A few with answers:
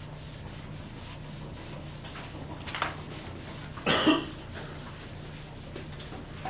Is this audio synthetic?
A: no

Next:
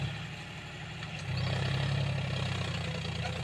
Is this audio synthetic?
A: no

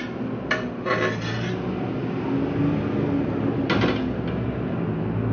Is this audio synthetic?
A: no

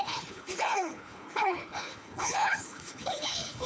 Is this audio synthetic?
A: yes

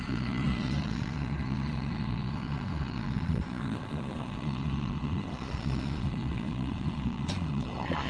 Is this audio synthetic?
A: yes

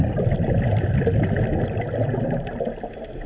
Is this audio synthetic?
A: no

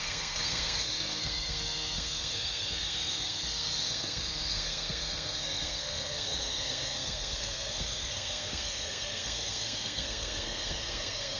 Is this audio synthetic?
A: yes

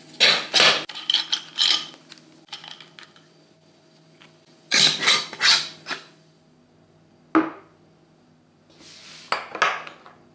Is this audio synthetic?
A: no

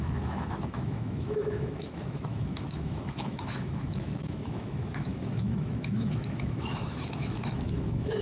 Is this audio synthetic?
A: yes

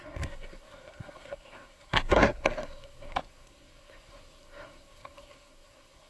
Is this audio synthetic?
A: yes